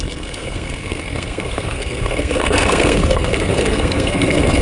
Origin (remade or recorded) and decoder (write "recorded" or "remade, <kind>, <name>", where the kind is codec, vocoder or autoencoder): remade, codec, SNAC